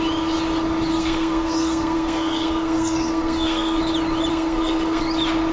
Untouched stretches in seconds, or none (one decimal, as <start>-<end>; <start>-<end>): 0.0-0.9; 3.8-4.3; 5.0-5.5

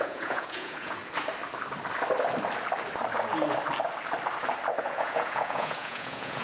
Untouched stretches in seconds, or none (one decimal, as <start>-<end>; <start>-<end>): 1.0-4.8